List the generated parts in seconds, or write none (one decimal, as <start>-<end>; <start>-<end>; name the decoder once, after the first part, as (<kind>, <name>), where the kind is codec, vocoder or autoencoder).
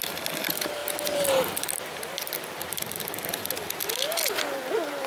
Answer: none